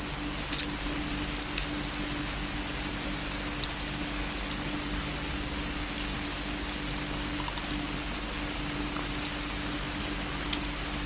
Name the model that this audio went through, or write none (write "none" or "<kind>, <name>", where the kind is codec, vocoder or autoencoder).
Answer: none